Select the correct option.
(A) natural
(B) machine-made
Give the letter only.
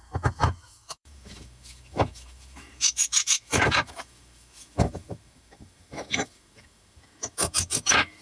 B